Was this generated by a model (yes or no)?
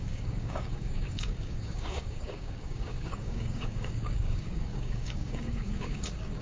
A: yes